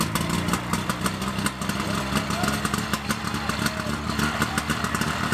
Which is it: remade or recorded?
recorded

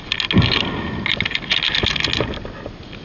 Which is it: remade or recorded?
recorded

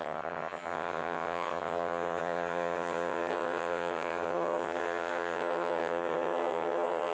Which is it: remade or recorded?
remade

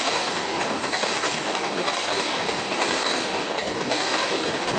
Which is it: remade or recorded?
remade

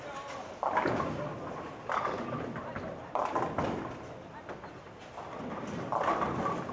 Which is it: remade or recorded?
recorded